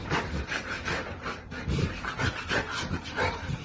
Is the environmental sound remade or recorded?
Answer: recorded